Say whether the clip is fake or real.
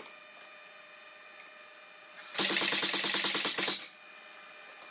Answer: real